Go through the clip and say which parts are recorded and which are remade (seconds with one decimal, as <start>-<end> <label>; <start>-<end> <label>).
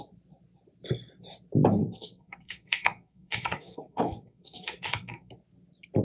0.0-1.8 recorded; 1.8-5.3 remade; 5.3-6.0 recorded